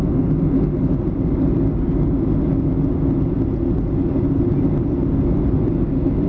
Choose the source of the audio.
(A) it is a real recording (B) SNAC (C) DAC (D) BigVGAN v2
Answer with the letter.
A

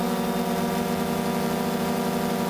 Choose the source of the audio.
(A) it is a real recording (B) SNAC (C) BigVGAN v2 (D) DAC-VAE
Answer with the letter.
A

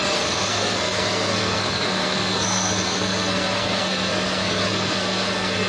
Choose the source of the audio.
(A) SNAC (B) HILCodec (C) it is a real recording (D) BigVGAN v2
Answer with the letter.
A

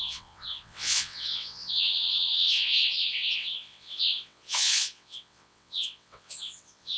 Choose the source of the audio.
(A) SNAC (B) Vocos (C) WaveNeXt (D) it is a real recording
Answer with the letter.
C